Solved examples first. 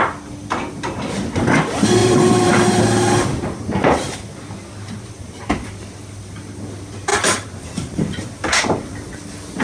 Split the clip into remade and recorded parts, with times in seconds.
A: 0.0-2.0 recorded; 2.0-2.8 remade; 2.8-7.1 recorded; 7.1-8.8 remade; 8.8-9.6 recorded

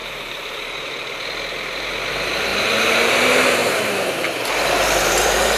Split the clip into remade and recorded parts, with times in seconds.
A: 0.0-0.9 remade; 0.9-3.6 recorded; 3.6-5.6 remade

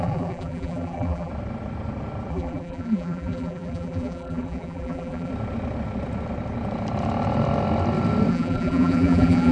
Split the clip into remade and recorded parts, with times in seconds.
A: 0.0-1.3 remade; 1.3-2.3 recorded; 2.3-5.3 remade; 5.3-8.3 recorded; 8.3-9.5 remade

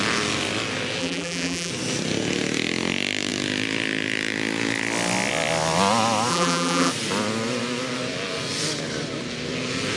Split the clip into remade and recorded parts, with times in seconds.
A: 0.0-1.0 recorded; 1.0-1.7 remade; 1.7-6.3 recorded; 6.3-6.9 remade; 6.9-10.0 recorded